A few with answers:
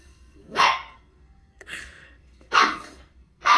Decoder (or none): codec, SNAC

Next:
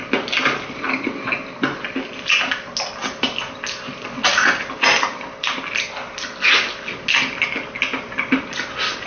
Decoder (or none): none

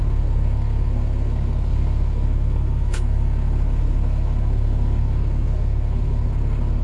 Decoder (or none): codec, SNAC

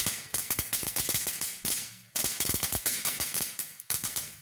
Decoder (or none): codec, SNAC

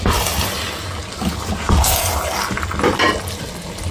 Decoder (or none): none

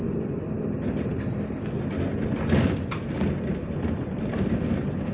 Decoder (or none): none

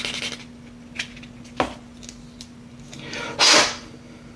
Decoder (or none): none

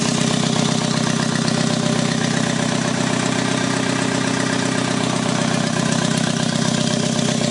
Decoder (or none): none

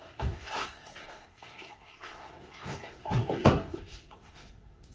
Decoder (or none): codec, SNAC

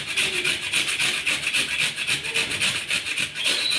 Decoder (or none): none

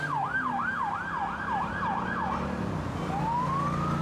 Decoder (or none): none